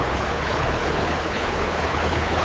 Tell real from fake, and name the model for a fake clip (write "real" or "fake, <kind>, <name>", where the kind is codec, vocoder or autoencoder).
fake, codec, HILCodec